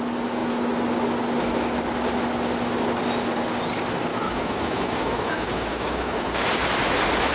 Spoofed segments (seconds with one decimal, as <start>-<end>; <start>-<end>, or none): 4.1-6.5